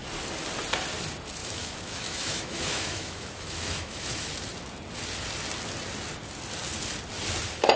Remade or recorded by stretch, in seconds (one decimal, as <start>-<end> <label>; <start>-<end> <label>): 0.0-1.4 recorded; 1.4-4.3 remade; 4.3-7.8 recorded